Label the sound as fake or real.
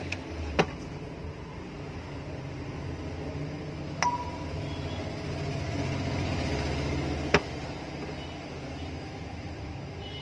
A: real